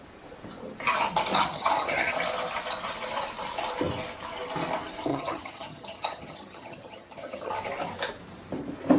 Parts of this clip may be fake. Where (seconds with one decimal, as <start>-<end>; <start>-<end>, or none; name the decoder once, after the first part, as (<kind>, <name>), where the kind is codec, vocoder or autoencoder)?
1.3-2.1 (vocoder, HiFi-GAN); 5.1-7.5